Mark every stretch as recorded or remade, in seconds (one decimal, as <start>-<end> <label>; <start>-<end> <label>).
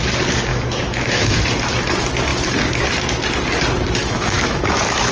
0.0-0.5 recorded; 0.5-1.4 remade; 1.4-4.0 recorded; 4.0-5.1 remade